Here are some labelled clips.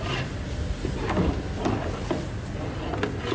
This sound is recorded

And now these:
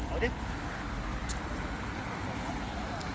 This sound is remade